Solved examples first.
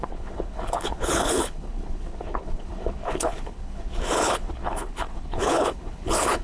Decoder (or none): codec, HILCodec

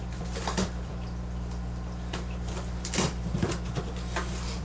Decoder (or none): vocoder, BigVGAN v2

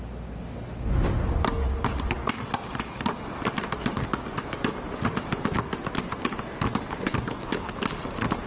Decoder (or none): none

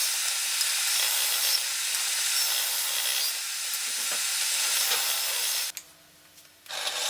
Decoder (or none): none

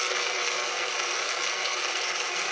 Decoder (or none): codec, SNAC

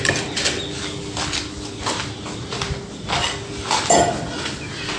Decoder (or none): none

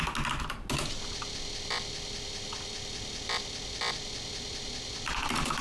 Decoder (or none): none